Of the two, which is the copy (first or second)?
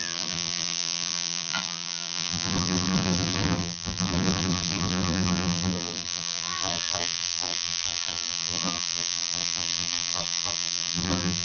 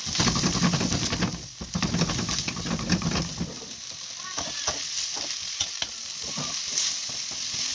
first